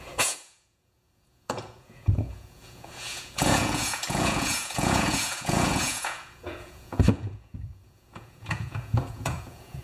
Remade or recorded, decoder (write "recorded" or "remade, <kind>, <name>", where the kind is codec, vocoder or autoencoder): remade, vocoder, Vocos